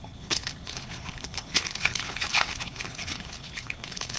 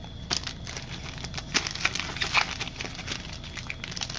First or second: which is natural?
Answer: second